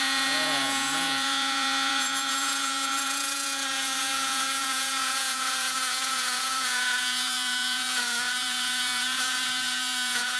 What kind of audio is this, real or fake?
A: fake